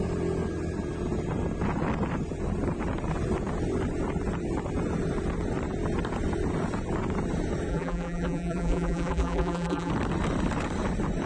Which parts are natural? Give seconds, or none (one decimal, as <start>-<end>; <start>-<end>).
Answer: 0.0-7.7; 9.9-11.3